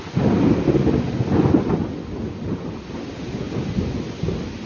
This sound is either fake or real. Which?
real